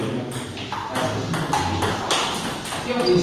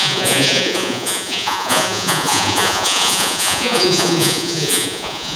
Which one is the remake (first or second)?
second